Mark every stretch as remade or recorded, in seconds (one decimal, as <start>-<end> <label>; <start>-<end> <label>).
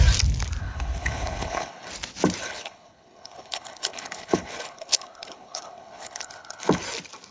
0.0-0.6 recorded; 0.6-1.9 remade; 1.9-2.4 recorded; 2.4-6.8 remade; 6.8-7.3 recorded